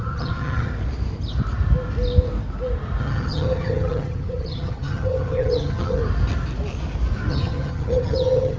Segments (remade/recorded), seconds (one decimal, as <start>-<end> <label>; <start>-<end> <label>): 0.0-0.7 remade; 0.7-3.0 recorded; 3.0-6.0 remade; 6.0-7.3 recorded; 7.3-8.6 remade